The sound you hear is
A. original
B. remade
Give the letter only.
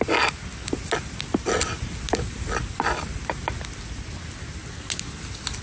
A